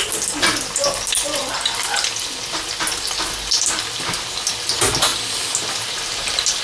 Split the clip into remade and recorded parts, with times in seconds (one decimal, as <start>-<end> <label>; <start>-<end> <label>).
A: 0.0-6.6 recorded